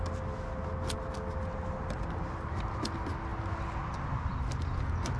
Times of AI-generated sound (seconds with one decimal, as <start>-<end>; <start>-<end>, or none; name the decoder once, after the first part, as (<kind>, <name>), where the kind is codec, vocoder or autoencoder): none